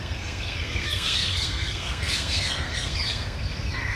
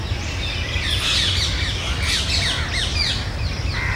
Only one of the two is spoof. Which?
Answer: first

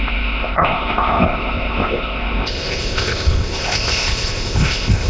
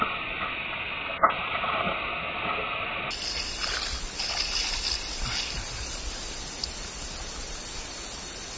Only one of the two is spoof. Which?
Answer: first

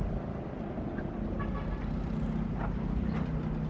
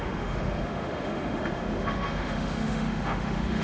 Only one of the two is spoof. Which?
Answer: second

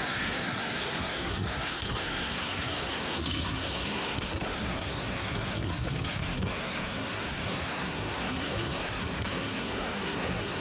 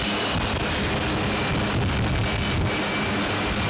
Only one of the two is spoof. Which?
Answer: first